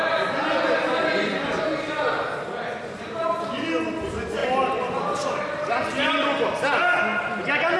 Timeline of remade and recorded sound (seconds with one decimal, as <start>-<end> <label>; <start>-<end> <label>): 0.0-7.8 recorded